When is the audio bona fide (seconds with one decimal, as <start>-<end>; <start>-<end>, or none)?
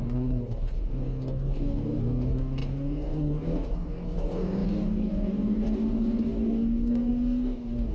none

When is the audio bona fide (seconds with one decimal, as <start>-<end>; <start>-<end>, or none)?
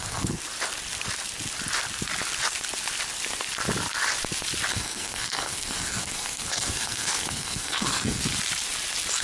0.4-4.7; 8.2-9.2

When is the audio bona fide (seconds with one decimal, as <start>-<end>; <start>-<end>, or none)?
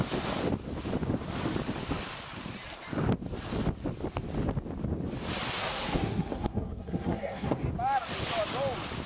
0.0-5.7; 7.7-9.1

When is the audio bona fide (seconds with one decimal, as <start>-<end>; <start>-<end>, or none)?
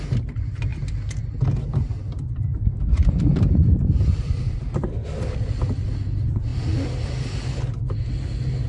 0.0-8.7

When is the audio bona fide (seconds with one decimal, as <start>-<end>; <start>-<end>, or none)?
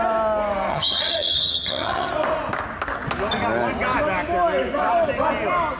0.0-0.7; 2.1-5.8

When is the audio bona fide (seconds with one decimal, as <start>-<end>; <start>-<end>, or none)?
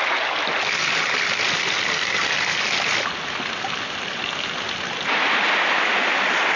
0.0-6.6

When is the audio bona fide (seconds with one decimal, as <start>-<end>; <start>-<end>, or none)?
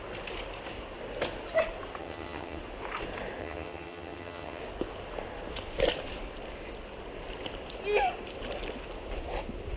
0.0-2.0; 2.6-3.4; 4.6-9.8